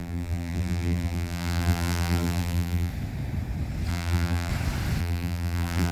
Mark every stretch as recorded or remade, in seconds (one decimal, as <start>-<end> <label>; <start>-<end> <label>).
0.0-2.9 remade; 2.9-3.9 recorded; 3.9-4.5 remade; 4.5-5.0 recorded; 5.0-5.9 remade